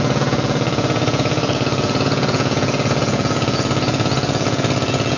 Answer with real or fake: fake